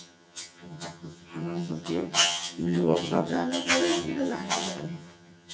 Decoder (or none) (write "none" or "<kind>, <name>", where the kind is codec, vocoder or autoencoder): vocoder, HiFi-GAN